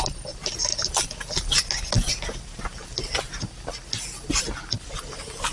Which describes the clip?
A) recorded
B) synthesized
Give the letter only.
A